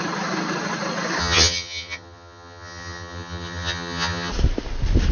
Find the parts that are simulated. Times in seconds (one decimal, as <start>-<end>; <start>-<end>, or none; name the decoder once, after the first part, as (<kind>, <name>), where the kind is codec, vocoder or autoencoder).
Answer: 1.2-4.3 (vocoder, HiFi-GAN)